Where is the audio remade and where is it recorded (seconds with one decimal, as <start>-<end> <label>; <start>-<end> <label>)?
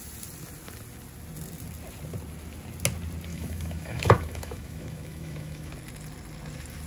0.0-3.3 recorded; 3.3-5.7 remade; 5.7-6.9 recorded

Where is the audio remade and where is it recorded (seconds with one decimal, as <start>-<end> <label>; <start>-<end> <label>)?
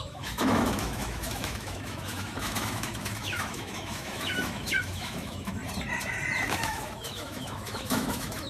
0.0-5.6 remade; 5.6-6.5 recorded; 6.5-8.5 remade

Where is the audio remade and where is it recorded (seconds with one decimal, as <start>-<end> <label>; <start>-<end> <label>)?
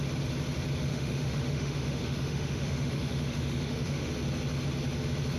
0.0-0.9 recorded; 0.9-4.1 remade; 4.1-5.4 recorded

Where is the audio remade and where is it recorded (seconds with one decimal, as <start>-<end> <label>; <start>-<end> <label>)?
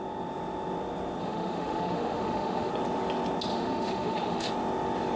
0.0-1.2 recorded; 1.2-2.7 remade; 2.7-3.5 recorded; 3.5-4.5 remade; 4.5-5.2 recorded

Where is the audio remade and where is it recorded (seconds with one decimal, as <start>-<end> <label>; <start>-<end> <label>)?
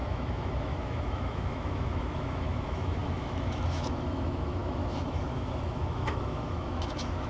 0.0-7.3 remade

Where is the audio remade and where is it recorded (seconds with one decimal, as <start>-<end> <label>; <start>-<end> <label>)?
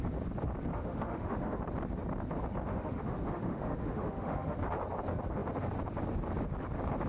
0.0-0.7 recorded; 0.7-1.6 remade; 1.6-2.7 recorded; 2.7-4.6 remade; 4.6-7.1 recorded